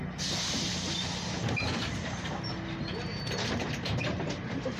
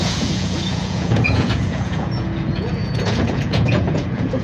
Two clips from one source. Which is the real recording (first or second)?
first